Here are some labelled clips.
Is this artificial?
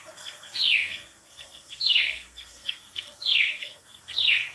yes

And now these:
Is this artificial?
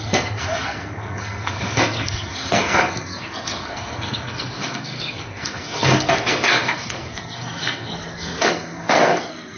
yes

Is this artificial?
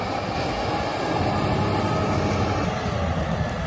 no